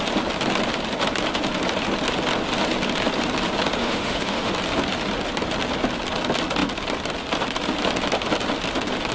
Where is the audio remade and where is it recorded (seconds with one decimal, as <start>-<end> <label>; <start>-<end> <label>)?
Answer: 0.0-3.8 recorded; 3.8-4.5 remade; 4.5-9.1 recorded